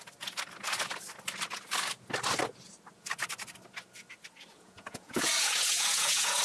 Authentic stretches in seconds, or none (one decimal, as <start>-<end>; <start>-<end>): 0.0-4.5